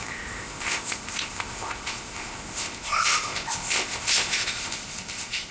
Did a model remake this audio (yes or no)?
yes